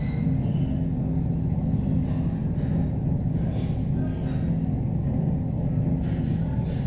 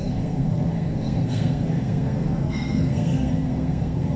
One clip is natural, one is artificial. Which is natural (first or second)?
first